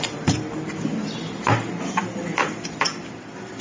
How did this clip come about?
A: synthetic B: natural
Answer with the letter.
A